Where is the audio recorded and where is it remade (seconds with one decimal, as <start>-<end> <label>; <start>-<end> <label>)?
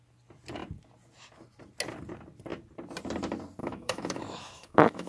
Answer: 0.0-3.6 recorded; 3.6-5.1 remade